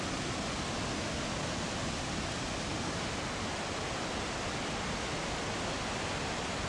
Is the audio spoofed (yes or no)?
no